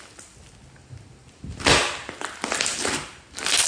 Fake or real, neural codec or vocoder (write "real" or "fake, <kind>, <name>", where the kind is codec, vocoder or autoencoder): real